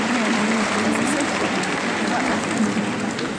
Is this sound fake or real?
real